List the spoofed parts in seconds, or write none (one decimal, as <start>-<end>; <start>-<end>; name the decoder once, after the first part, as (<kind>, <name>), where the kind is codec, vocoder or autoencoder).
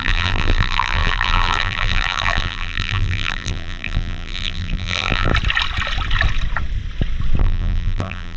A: 0.0-5.3 (vocoder, BigVGAN v2); 7.4-8.4